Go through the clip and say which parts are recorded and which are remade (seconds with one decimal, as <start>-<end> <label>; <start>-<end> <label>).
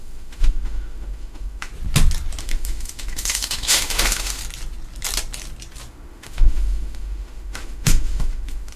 0.0-1.7 remade; 1.7-2.4 recorded; 2.4-4.4 remade; 4.4-5.9 recorded; 5.9-8.8 remade